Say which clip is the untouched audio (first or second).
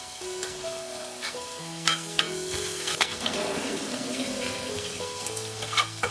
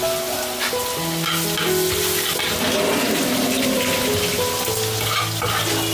second